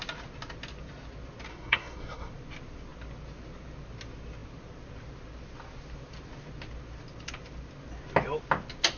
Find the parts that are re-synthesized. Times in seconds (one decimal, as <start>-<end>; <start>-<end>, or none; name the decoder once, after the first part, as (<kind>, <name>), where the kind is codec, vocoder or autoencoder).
1.5-2.3 (codec, SNAC)